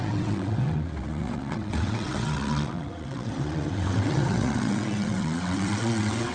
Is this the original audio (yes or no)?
no